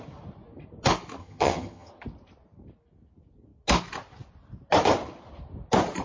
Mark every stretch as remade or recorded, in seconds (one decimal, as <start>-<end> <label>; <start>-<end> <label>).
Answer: 0.0-1.2 recorded; 1.2-1.9 remade; 1.9-6.0 recorded